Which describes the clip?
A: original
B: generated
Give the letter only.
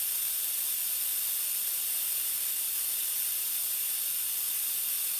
A